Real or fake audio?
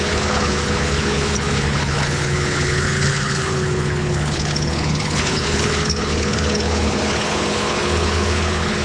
fake